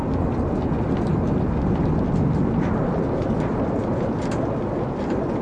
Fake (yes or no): no